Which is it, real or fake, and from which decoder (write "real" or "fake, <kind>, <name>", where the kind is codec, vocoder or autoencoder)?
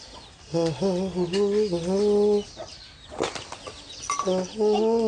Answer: real